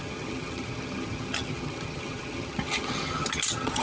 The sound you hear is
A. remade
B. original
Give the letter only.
A